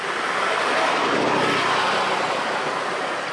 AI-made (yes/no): no